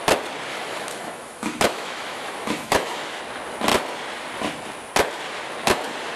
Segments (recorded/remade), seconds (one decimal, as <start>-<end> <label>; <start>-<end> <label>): 0.0-0.5 recorded; 0.5-3.2 remade; 3.2-6.2 recorded